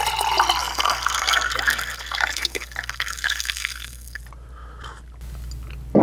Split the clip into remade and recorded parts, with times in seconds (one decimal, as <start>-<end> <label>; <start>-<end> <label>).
0.0-0.6 recorded; 0.6-4.2 remade; 4.2-6.0 recorded